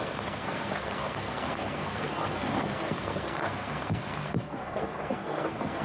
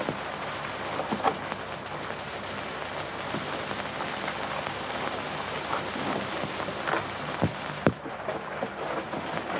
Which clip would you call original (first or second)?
second